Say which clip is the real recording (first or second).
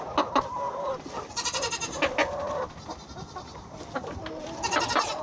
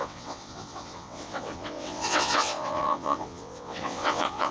first